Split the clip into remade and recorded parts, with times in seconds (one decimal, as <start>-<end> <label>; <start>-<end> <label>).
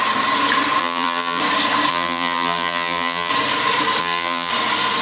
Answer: 0.0-0.8 recorded; 0.8-1.4 remade; 1.4-1.9 recorded; 1.9-3.3 remade; 3.3-4.0 recorded; 4.0-4.5 remade; 4.5-5.0 recorded